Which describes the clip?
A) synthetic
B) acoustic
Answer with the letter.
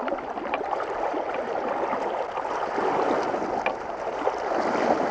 B